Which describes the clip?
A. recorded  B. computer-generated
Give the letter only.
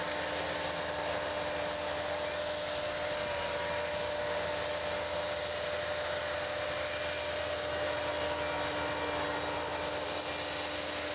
A